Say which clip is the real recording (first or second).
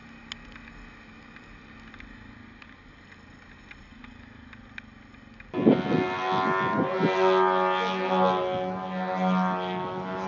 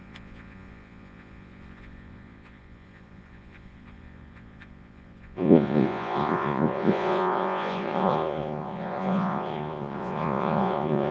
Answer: first